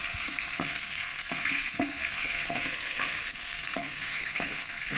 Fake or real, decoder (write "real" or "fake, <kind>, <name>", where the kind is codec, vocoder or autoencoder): fake, codec, SNAC